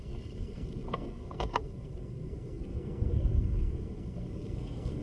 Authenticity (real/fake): fake